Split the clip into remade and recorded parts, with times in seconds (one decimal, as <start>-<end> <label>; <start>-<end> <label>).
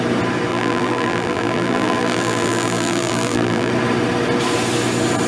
0.0-0.5 recorded; 0.5-3.7 remade; 3.7-5.3 recorded